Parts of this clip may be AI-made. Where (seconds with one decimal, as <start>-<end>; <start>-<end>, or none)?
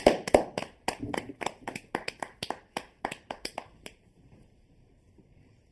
0.0-0.6; 3.3-5.7